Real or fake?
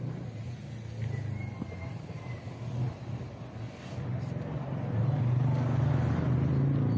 real